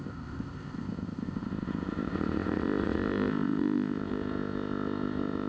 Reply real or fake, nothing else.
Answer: fake